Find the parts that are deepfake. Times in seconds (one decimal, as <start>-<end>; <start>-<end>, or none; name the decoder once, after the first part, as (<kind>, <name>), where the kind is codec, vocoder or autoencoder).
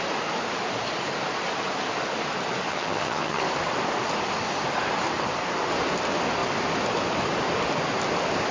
2.7-3.4 (vocoder, HiFi-GAN)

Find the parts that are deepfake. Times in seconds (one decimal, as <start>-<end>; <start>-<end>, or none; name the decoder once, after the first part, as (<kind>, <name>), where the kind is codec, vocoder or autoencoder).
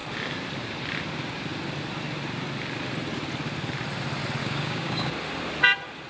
4.4-5.1 (codec, DAC)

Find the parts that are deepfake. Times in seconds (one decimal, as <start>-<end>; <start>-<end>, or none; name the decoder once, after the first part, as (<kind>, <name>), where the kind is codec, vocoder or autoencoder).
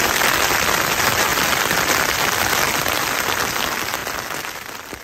none